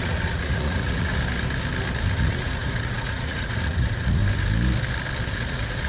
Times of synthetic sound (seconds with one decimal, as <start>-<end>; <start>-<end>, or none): 0.0-1.1; 2.2-4.2; 5.3-5.9